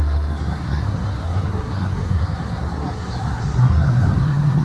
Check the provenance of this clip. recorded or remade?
remade